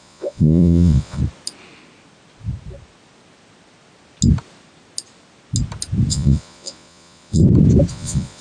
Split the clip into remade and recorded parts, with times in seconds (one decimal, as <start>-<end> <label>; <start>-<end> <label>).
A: 0.0-1.2 remade; 1.2-6.1 recorded; 6.1-7.4 remade; 7.4-7.9 recorded; 7.9-8.4 remade